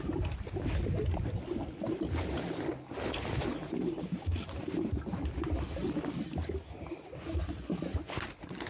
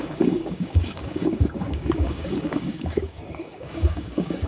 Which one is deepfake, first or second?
second